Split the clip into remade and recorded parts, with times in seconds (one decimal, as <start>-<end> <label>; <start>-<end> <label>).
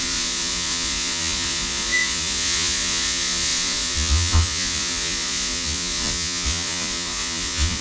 0.0-7.8 remade